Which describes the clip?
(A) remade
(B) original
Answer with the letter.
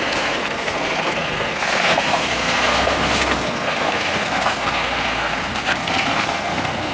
A